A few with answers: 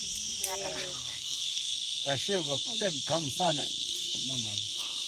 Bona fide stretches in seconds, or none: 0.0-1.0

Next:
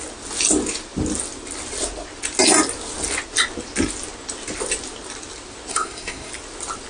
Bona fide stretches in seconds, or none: 0.0-5.7; 6.3-6.9

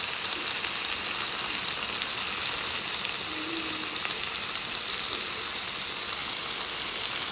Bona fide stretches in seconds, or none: 0.0-7.3